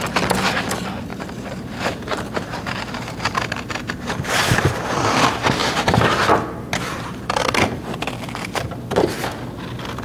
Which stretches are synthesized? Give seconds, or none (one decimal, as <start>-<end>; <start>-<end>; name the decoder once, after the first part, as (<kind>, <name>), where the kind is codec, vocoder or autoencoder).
1.1-4.9 (vocoder, BigVGAN v2); 5.6-7.2